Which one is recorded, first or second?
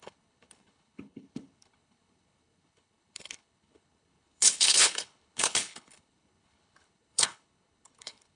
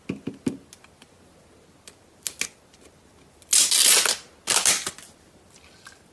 second